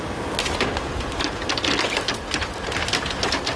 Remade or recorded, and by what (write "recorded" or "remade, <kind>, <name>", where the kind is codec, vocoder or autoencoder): recorded